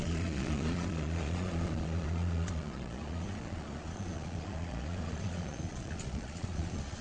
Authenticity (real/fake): fake